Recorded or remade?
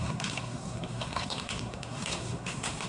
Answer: remade